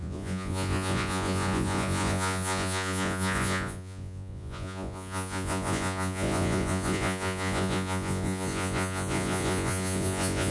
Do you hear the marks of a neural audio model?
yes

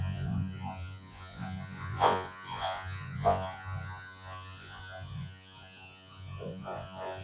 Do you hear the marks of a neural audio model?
yes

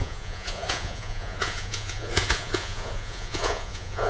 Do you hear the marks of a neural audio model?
yes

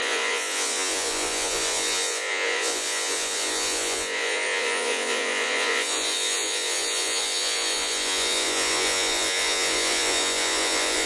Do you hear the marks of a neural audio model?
yes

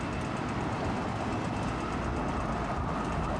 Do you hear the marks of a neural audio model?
no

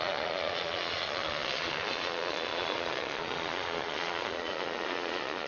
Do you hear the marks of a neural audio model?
yes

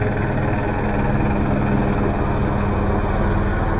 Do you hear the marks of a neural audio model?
no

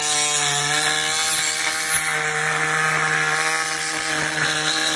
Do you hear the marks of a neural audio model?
no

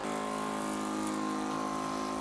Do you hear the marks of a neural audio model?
no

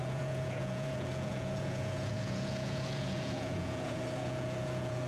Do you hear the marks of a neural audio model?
yes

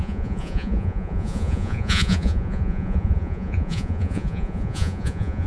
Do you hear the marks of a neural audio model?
yes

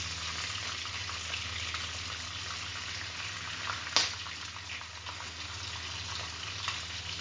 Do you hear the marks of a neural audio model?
no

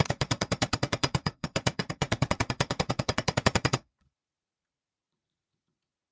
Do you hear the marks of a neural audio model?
yes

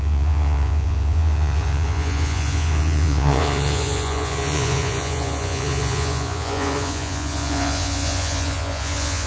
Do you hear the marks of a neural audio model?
yes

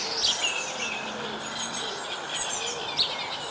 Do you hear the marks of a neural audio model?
no